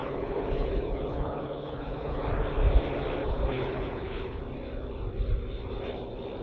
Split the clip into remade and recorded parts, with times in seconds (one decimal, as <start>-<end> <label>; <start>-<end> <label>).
0.0-2.2 remade; 2.2-3.2 recorded; 3.2-4.4 remade; 4.4-6.4 recorded